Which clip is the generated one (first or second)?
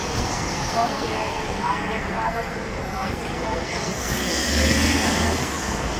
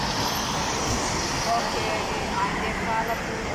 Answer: first